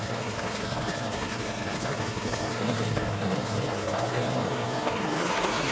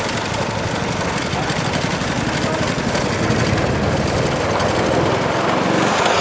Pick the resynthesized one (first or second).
first